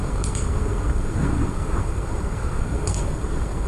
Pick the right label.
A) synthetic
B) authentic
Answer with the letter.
A